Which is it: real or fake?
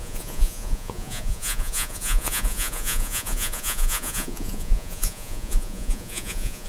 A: fake